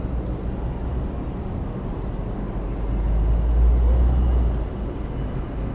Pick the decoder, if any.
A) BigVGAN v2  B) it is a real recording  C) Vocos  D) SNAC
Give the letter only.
B